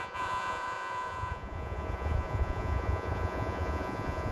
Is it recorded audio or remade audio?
remade